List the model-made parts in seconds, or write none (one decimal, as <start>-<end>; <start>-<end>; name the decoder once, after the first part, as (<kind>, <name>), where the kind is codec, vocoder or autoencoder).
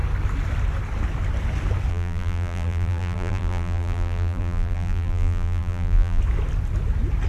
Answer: 1.9-6.2 (vocoder, BigVGAN v2)